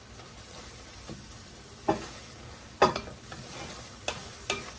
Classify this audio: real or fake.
real